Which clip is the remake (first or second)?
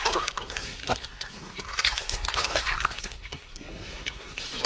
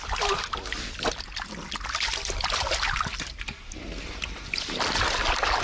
first